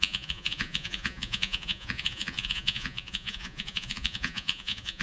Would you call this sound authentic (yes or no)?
no